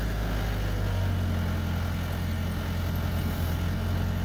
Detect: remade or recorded recorded